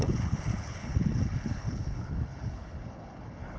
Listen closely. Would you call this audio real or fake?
fake